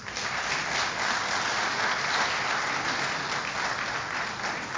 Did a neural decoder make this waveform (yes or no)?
no